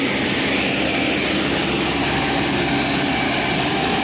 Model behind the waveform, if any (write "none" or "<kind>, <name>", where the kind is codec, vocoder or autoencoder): none